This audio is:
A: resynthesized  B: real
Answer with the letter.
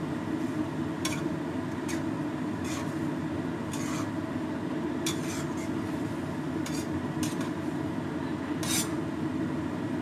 B